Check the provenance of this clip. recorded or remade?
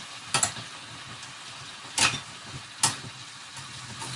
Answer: recorded